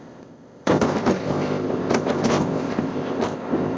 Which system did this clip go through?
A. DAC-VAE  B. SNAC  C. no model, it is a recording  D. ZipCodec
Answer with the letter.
D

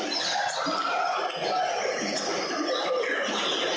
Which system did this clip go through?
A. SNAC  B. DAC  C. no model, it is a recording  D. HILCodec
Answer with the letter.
C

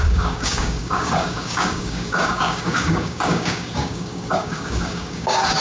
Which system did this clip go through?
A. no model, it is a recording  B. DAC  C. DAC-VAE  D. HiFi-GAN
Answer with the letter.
B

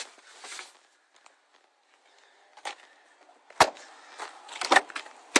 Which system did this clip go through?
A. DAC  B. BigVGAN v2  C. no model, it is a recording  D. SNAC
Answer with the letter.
C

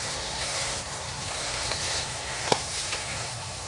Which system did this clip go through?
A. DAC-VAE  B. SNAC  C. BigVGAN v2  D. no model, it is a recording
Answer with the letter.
B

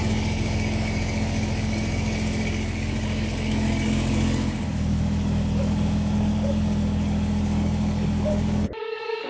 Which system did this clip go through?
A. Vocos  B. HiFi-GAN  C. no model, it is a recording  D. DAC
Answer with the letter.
D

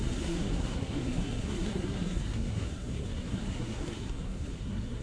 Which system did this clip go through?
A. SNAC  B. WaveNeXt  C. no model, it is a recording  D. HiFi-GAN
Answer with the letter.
A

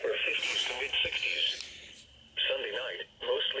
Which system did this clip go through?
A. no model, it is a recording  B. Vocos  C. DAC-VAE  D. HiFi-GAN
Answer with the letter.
A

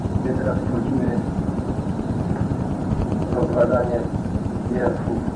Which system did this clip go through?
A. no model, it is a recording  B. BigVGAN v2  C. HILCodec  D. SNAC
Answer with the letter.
B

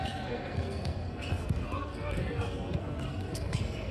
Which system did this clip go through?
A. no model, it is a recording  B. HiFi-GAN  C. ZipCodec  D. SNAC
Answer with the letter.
D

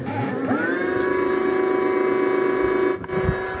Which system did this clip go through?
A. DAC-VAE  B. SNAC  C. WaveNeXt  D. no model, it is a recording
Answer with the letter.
D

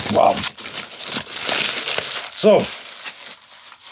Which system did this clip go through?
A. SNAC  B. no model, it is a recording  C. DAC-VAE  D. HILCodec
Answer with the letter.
B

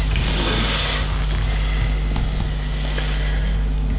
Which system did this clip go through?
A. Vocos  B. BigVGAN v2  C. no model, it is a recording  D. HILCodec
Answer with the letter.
C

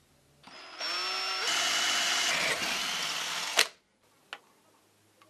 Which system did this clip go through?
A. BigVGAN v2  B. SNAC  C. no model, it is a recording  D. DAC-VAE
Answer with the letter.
C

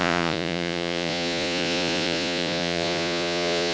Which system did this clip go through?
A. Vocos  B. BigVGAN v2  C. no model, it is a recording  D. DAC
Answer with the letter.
A